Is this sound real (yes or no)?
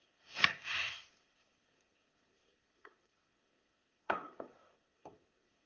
no